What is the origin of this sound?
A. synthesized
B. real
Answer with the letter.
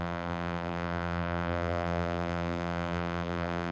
A